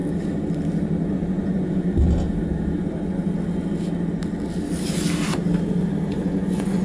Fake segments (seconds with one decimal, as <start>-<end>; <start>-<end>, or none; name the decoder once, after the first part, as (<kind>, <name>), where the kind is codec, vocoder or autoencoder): 1.1-2.0 (vocoder, Vocos); 6.1-6.8